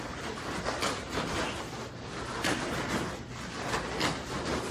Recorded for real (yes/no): yes